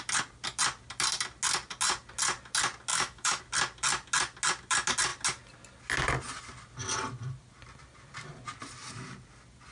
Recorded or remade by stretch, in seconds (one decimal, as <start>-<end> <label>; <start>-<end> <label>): 0.0-2.9 recorded; 2.9-3.4 remade; 3.4-9.7 recorded